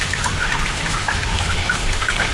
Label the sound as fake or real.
fake